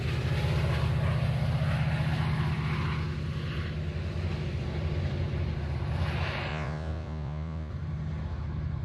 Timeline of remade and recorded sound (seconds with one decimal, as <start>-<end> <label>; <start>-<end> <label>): 0.0-6.5 recorded; 6.5-7.7 remade; 7.7-8.8 recorded